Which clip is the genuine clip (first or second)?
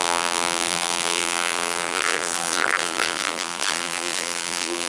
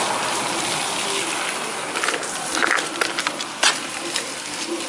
second